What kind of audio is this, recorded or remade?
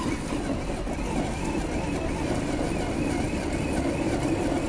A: recorded